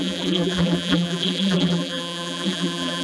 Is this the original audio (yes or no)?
no